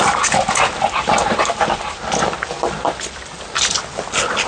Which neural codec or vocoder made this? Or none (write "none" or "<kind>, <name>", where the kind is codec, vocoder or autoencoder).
none